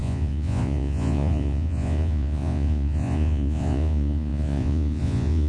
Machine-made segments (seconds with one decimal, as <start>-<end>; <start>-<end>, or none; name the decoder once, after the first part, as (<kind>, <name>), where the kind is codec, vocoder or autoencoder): 0.0-5.5 (vocoder, Vocos)